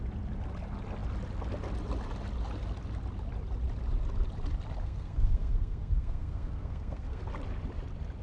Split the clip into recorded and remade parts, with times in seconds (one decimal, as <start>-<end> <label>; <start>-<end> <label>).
0.0-4.8 recorded; 4.8-7.2 remade; 7.2-8.2 recorded